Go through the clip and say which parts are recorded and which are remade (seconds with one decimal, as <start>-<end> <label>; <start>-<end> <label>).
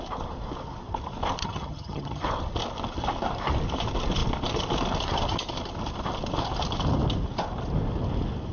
0.0-1.4 recorded; 1.4-2.2 remade; 2.2-8.5 recorded